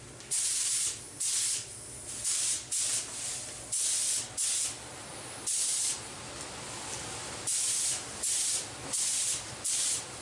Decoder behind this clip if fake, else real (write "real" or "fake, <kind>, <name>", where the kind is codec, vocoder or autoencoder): real